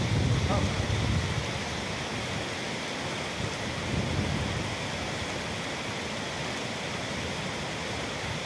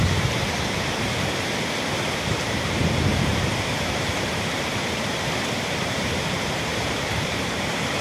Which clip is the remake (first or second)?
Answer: second